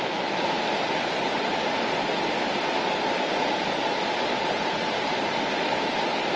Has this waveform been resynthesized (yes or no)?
no